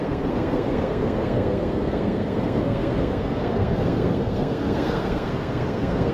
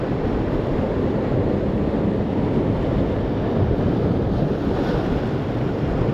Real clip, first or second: second